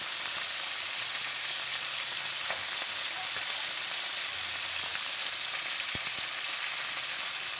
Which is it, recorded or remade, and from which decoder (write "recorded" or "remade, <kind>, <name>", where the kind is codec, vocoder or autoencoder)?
recorded